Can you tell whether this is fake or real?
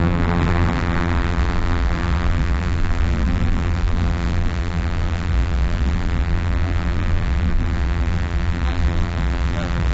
fake